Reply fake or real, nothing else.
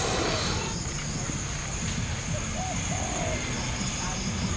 real